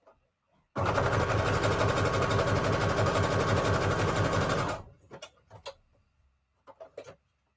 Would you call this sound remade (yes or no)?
no